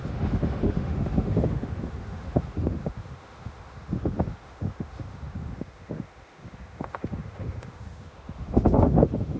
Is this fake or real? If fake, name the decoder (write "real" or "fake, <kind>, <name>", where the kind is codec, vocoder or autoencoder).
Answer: fake, autoencoder, DAC-VAE